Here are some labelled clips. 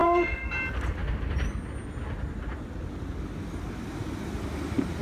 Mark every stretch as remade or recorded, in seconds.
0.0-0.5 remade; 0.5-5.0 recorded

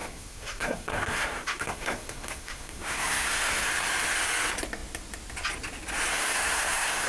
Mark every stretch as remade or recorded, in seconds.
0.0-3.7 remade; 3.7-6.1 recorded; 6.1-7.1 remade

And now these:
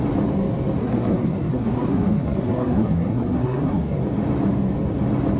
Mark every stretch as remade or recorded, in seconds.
0.0-0.8 recorded; 0.8-4.0 remade; 4.0-5.4 recorded

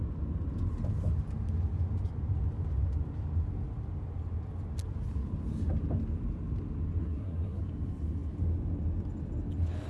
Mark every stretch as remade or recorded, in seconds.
0.0-7.0 recorded; 7.0-7.6 remade; 7.6-9.9 recorded

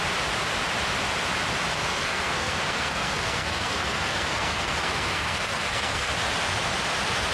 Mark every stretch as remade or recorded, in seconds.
0.0-1.7 recorded; 1.7-6.1 remade; 6.1-7.3 recorded